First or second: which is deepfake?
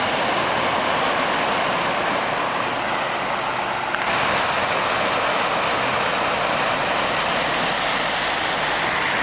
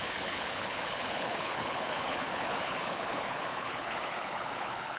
second